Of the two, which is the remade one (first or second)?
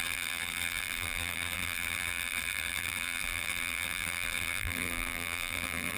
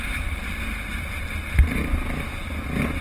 first